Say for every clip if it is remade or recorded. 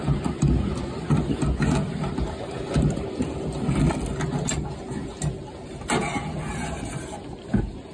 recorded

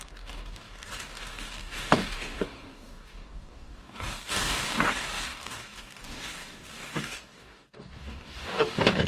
remade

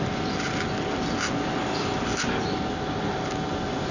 recorded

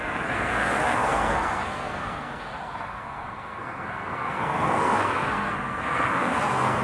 remade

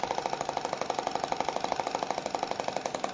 recorded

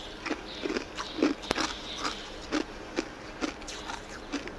recorded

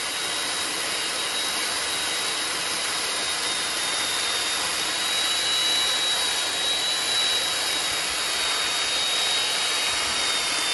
recorded